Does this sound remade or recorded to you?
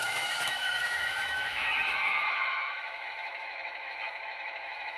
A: remade